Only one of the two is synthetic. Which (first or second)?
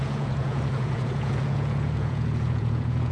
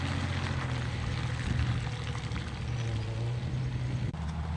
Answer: first